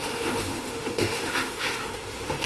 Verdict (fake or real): fake